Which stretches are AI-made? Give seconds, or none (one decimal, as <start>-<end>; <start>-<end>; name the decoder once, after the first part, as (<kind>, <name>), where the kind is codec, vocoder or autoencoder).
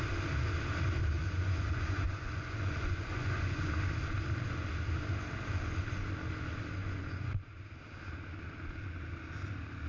1.2-3.7 (vocoder, Vocos); 6.8-7.3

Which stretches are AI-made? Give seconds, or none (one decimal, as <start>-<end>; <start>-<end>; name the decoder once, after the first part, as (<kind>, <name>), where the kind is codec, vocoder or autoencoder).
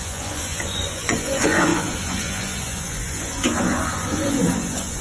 0.0-5.0 (vocoder, Vocos)